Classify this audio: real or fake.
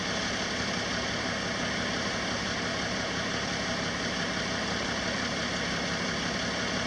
real